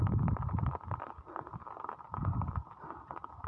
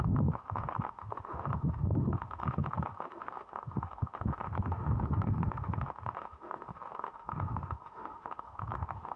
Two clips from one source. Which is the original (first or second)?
first